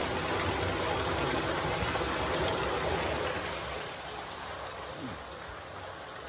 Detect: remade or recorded recorded